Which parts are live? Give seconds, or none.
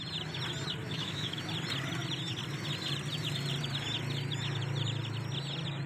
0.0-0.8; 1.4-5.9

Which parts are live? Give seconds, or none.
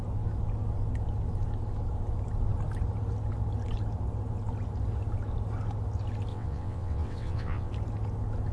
0.0-6.3; 7.7-8.5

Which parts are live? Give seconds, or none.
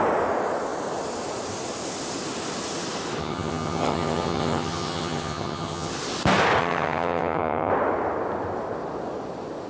0.0-3.2; 5.9-6.6; 7.7-9.7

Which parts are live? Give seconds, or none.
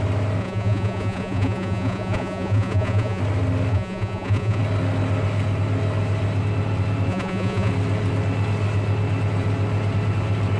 0.0-0.4; 3.2-3.7; 4.6-7.1; 7.7-10.6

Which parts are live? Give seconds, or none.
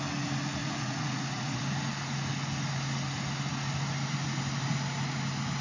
0.0-0.6; 1.6-5.6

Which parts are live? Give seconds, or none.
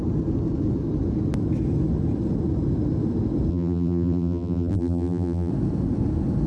0.0-3.5; 5.5-6.5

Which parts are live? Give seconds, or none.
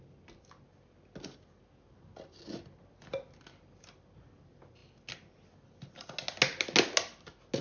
0.0-7.6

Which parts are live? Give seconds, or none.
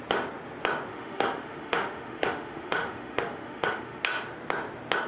0.0-0.9; 4.0-5.1